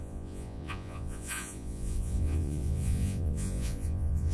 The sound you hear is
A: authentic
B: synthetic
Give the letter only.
B